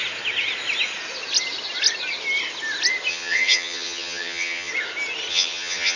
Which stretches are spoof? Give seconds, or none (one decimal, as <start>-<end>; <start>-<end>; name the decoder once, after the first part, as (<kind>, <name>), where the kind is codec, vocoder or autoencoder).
3.1-4.7 (vocoder, HiFi-GAN); 5.3-6.0